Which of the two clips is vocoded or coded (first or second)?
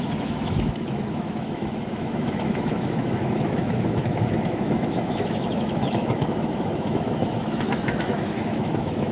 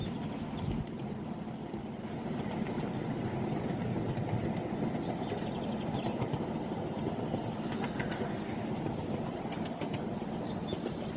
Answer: first